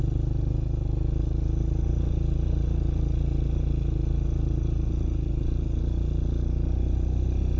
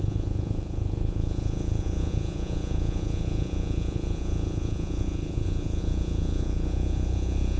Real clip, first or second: first